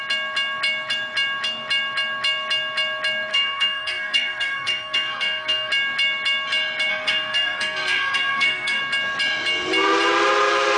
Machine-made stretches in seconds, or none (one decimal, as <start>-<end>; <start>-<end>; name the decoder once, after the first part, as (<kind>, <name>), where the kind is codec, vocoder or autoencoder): 3.3-5.7 (codec, SNAC); 6.9-8.8